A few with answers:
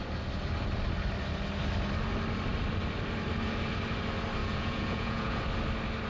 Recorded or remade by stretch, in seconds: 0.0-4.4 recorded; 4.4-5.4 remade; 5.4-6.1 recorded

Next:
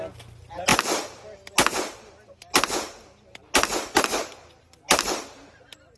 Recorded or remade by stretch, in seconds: 0.0-6.0 recorded

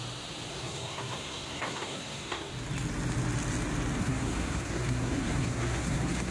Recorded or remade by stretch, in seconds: 0.0-0.5 recorded; 0.5-2.5 remade; 2.5-4.0 recorded; 4.0-6.3 remade

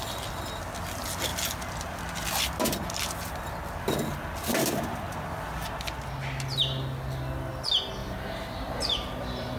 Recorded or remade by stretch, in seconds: 0.0-8.0 recorded; 8.0-9.6 remade